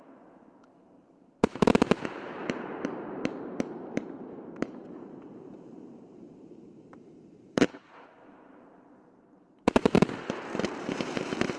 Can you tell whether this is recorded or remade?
remade